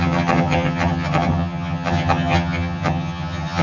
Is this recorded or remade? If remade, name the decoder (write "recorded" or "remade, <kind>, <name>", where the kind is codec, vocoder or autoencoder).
remade, vocoder, HiFi-GAN